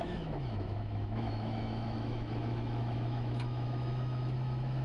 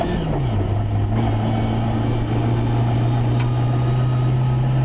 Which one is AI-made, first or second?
first